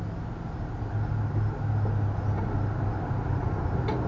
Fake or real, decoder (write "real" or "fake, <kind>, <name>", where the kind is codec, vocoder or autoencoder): real